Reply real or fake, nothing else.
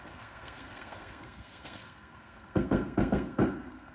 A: fake